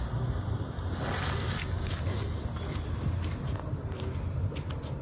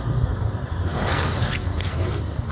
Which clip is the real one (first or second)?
first